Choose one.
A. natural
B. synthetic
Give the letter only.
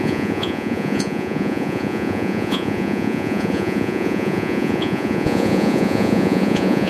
B